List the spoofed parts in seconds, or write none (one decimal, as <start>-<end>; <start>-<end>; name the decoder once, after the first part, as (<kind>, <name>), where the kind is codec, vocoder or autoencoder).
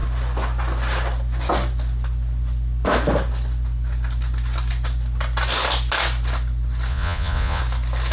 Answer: 6.9-7.6 (vocoder, Vocos)